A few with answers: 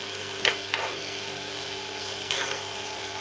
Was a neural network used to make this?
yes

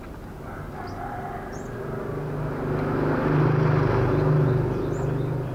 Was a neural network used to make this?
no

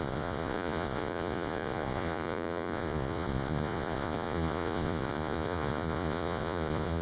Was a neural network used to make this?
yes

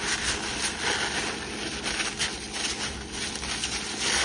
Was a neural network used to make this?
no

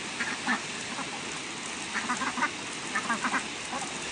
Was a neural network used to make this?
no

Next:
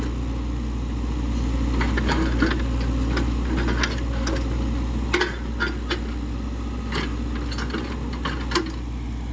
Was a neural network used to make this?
no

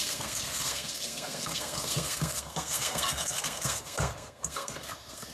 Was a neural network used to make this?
yes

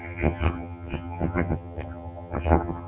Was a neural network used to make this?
yes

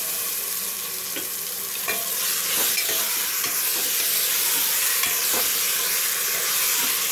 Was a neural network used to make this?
no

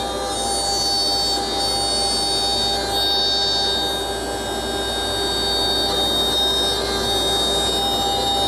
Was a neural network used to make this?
no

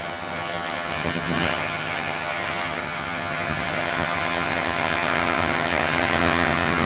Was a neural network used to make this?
yes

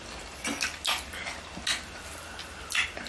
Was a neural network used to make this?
no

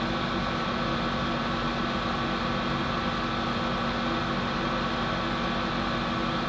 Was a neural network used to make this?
no